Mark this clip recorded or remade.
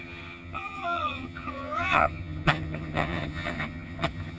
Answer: remade